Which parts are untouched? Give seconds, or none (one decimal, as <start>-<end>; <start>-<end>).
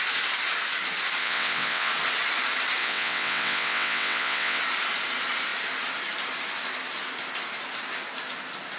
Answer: 0.0-1.2; 1.9-2.8; 4.6-8.8